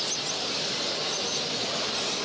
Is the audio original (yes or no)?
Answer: yes